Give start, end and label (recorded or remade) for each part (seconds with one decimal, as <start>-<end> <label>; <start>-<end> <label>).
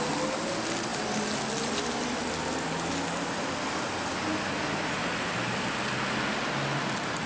0.0-7.3 recorded